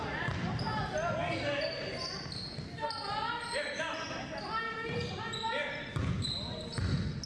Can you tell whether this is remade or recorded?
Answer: recorded